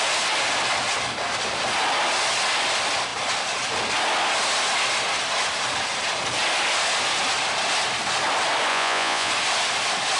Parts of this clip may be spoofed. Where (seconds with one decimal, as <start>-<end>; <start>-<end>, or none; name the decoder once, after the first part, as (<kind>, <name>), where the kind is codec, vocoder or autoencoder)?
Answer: 8.7-9.3 (vocoder, Vocos)